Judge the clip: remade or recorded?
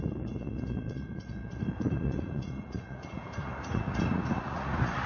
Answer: remade